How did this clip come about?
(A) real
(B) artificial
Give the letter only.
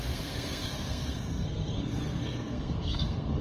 B